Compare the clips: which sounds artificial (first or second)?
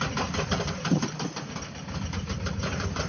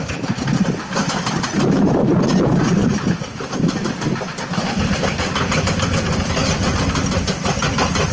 first